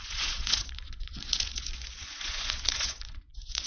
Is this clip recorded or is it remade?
remade